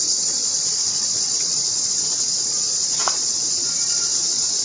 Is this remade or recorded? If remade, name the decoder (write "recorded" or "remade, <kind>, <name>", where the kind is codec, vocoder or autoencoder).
remade, vocoder, Vocos